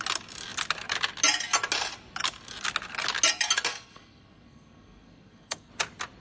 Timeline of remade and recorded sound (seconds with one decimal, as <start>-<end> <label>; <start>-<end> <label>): 0.0-3.7 recorded; 3.7-5.7 remade; 5.7-6.2 recorded